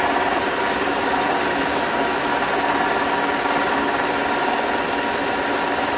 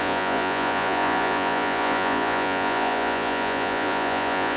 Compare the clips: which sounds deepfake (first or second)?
second